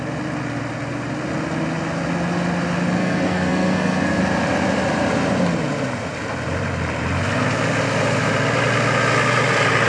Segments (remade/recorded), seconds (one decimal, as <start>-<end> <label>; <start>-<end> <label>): 0.0-3.0 recorded; 3.0-4.2 remade; 4.2-9.9 recorded